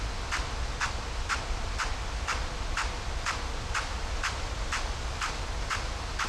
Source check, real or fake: real